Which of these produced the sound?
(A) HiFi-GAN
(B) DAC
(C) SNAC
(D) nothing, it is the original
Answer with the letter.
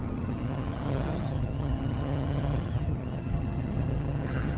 A